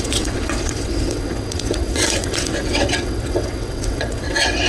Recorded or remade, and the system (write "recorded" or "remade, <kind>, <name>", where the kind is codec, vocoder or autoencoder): remade, vocoder, WaveNeXt